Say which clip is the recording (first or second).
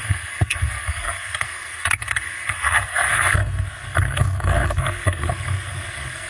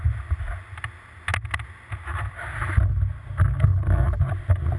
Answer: second